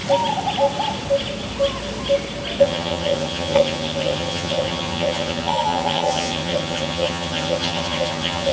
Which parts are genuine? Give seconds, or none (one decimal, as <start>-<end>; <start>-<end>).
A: 0.0-2.6